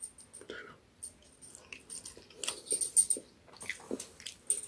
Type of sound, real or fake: real